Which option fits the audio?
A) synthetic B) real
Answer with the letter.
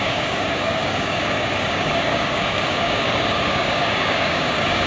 A